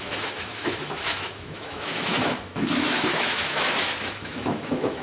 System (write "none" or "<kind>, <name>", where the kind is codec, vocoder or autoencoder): autoencoder, DAC-VAE